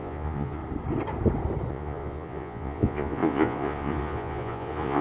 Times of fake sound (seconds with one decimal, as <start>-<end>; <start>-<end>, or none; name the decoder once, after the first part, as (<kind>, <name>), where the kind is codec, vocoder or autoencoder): 0.0-0.6 (vocoder, Vocos); 1.7-5.0